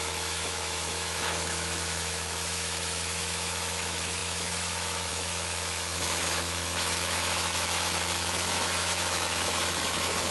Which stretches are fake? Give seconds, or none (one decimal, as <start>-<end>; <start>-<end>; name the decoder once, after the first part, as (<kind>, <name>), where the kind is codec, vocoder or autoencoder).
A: 0.0-10.3 (autoencoder, DAC-VAE)